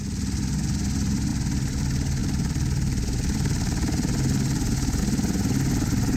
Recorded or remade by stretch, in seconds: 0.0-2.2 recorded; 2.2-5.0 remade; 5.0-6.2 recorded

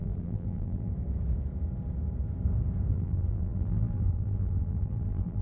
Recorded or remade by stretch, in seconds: 0.0-0.9 remade; 0.9-2.9 recorded; 2.9-5.4 remade

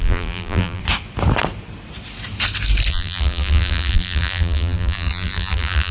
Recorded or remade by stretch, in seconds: 0.0-0.8 remade; 0.8-2.9 recorded; 2.9-5.9 remade

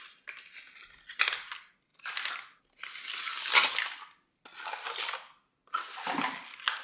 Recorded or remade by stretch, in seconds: 0.0-1.9 recorded; 1.9-2.6 remade; 2.6-6.8 recorded

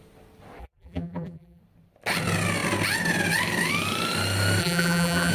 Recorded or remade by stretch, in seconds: 0.0-0.6 recorded; 0.6-1.6 remade; 1.6-4.6 recorded; 4.6-5.3 remade